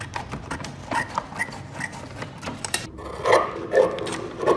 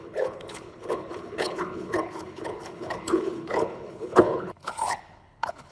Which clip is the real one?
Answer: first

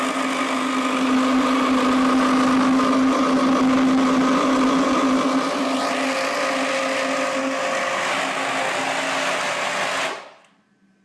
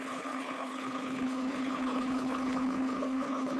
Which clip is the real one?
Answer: first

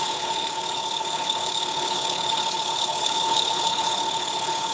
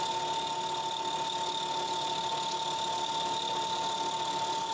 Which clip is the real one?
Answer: second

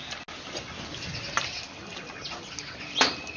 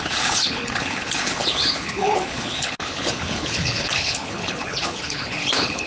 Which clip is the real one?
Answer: first